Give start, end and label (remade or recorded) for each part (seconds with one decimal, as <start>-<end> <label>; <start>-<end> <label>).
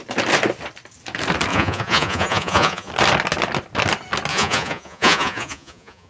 0.0-1.5 recorded; 1.5-2.9 remade; 2.9-4.3 recorded; 4.3-6.1 remade